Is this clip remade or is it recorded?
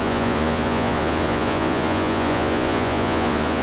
remade